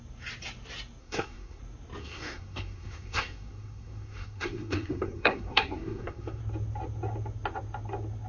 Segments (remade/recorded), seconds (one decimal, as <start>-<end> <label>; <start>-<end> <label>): 0.0-1.0 recorded; 1.0-1.6 remade; 1.6-2.0 recorded; 2.0-6.4 remade; 6.4-8.3 recorded